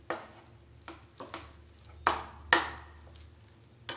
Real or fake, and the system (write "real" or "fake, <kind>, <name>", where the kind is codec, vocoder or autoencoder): real